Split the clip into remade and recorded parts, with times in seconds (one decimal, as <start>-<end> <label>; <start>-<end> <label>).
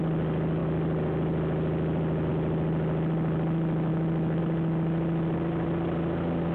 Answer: 0.0-3.9 recorded; 3.9-4.4 remade; 4.4-6.5 recorded